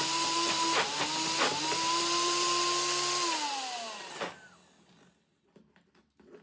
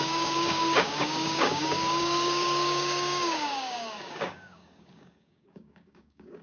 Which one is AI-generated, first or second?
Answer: second